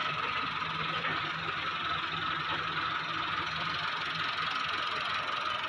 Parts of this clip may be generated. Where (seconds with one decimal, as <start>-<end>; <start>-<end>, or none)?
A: none